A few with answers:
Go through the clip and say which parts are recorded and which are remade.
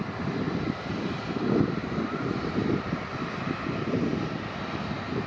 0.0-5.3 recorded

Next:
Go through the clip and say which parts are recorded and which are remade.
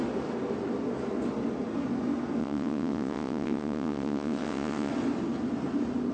0.0-2.4 recorded; 2.4-4.9 remade; 4.9-6.1 recorded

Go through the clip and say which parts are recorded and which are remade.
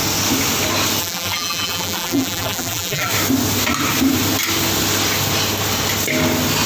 0.0-1.0 recorded; 1.0-3.1 remade; 3.1-6.7 recorded